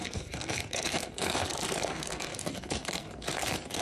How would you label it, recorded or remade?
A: remade